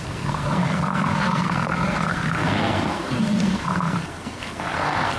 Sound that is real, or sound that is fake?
fake